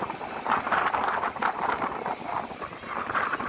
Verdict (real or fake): real